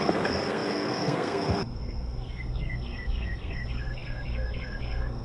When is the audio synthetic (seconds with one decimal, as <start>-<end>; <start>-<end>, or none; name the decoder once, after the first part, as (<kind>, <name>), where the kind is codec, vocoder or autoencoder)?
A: 0.0-5.2 (codec, SNAC)